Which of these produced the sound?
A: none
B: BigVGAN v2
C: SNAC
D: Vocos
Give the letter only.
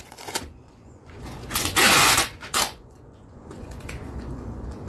D